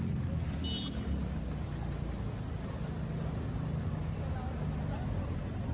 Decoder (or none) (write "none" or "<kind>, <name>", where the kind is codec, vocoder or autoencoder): none